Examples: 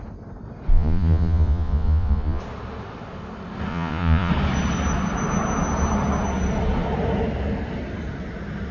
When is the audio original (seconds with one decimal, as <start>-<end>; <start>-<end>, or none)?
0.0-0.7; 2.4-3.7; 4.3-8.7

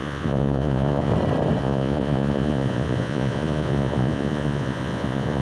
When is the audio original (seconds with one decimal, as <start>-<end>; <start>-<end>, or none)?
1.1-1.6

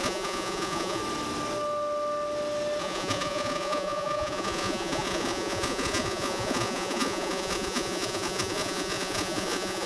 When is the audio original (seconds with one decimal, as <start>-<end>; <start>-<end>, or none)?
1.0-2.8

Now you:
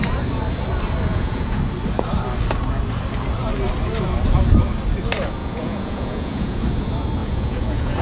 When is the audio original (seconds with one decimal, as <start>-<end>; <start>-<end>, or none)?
0.0-1.1; 1.6-5.4; 6.6-7.2

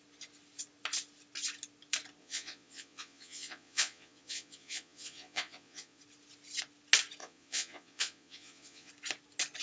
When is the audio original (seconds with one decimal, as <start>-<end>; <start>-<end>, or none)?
0.0-2.2; 6.0-7.2; 8.9-9.6